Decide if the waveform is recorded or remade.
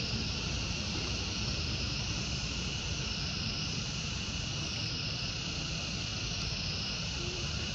remade